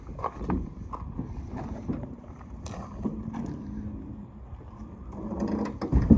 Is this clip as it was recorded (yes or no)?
yes